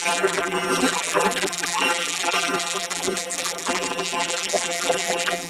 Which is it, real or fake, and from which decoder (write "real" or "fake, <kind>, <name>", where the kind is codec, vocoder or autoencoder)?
fake, vocoder, BigVGAN v2